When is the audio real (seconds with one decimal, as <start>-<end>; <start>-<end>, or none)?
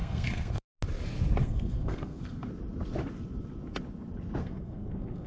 0.7-1.4; 2.5-4.4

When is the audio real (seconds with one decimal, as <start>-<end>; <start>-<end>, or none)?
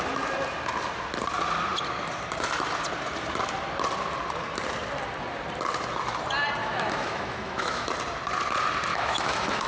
0.0-6.6; 7.9-8.9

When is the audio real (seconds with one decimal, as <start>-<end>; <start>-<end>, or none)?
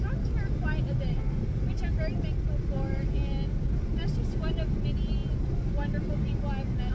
0.0-6.9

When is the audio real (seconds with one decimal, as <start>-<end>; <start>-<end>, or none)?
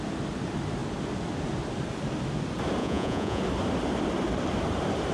0.0-2.8; 3.4-5.1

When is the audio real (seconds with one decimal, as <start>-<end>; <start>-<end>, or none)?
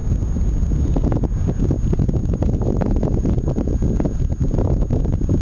0.0-2.2; 3.7-5.4